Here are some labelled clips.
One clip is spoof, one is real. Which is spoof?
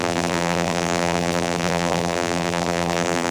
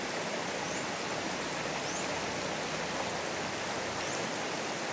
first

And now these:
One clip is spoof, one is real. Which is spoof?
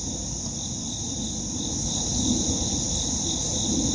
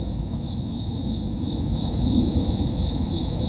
second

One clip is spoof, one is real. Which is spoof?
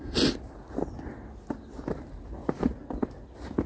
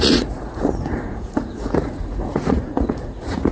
second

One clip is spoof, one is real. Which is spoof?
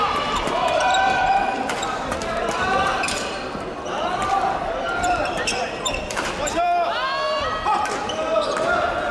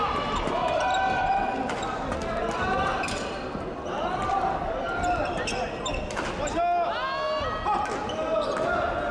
first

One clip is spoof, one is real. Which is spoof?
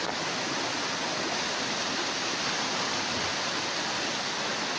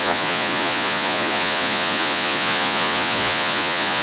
second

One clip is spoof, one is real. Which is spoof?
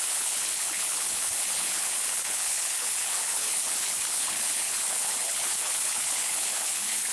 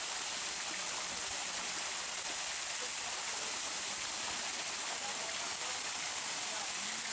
first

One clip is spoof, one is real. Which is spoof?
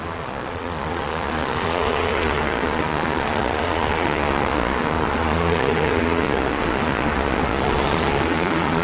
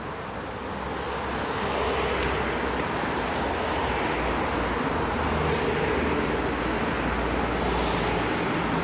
first